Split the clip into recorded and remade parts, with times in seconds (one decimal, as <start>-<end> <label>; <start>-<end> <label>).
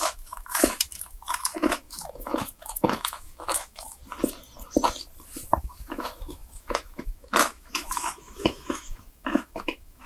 0.0-4.0 remade; 4.0-5.6 recorded; 5.6-10.1 remade